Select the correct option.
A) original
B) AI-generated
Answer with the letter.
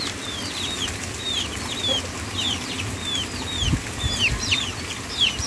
A